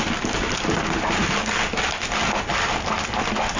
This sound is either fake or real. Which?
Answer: real